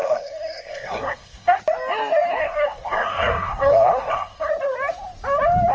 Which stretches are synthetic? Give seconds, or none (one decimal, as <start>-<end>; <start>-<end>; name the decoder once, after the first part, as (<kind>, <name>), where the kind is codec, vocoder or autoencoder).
0.0-1.6 (codec, SNAC); 2.4-4.5